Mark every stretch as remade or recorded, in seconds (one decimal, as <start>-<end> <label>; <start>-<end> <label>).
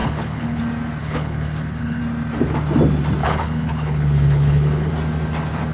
0.0-0.6 remade; 0.6-1.0 recorded; 1.0-2.0 remade; 2.0-3.2 recorded; 3.2-4.9 remade; 4.9-5.7 recorded